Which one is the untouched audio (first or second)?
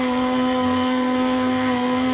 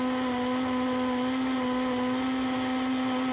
second